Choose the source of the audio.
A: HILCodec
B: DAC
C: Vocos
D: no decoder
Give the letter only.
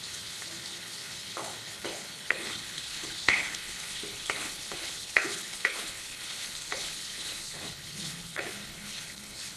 A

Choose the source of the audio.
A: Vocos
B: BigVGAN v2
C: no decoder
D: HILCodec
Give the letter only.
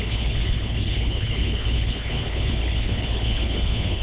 D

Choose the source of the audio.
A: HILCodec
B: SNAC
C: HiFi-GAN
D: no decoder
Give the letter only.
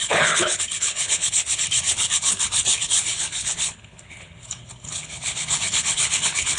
A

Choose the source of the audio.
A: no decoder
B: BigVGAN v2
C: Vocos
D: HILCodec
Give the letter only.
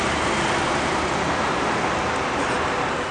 A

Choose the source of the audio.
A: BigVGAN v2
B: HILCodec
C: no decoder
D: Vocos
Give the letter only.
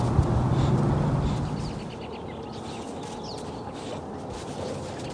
C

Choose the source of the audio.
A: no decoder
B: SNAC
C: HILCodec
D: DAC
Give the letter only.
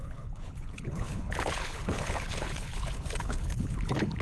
C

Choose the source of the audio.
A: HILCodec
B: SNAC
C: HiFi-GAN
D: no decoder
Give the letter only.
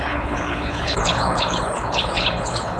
A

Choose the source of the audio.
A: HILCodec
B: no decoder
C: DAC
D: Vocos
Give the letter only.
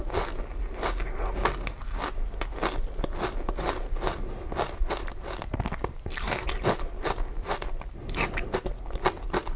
B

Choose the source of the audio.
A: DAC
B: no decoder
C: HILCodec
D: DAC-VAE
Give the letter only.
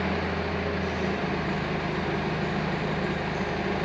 B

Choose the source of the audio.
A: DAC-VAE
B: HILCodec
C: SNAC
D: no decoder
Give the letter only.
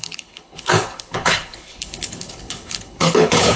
B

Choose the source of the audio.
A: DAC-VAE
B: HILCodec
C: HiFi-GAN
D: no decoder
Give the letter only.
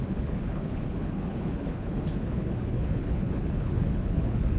B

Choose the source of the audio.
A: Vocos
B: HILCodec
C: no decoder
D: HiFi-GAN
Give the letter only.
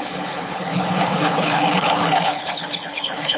B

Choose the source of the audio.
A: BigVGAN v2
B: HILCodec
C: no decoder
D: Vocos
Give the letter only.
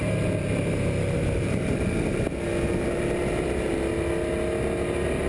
C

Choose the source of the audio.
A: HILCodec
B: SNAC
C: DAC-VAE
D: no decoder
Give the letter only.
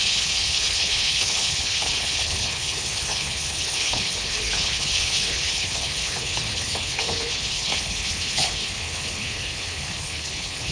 A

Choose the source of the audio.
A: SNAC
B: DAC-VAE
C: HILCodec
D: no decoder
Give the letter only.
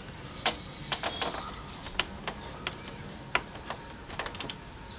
D